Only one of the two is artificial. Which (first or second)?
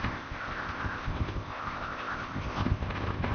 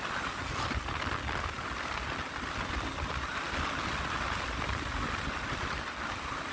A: first